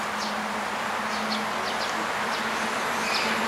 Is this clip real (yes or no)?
yes